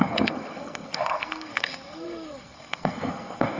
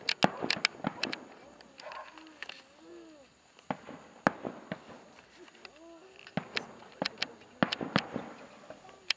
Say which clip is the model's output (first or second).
first